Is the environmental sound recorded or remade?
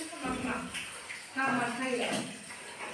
recorded